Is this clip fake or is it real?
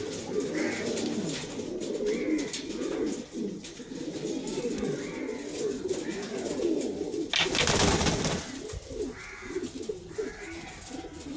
real